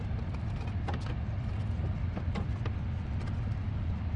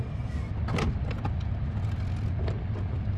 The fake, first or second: first